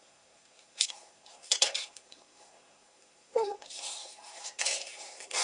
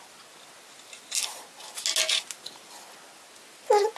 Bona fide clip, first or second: second